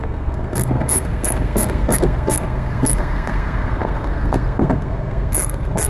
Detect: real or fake fake